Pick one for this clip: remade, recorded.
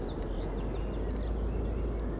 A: recorded